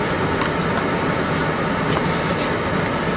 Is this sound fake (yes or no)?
no